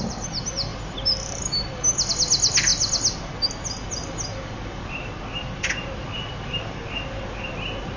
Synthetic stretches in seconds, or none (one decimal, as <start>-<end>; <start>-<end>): none